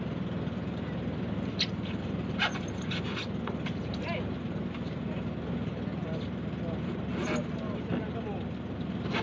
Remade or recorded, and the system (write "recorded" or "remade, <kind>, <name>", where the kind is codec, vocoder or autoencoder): recorded